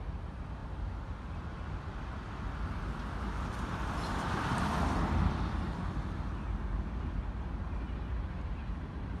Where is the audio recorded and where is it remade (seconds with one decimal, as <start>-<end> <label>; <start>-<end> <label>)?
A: 0.0-3.8 recorded; 3.8-5.9 remade; 5.9-9.2 recorded